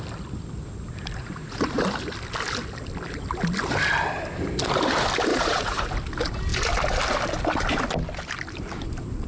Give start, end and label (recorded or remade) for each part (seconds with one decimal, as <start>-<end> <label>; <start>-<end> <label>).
0.0-1.2 recorded; 1.2-1.8 remade; 1.8-5.3 recorded; 5.3-5.9 remade; 5.9-9.3 recorded